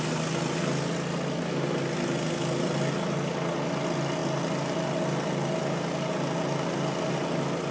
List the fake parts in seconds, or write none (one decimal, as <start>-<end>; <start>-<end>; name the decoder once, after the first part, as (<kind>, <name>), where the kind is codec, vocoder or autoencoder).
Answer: none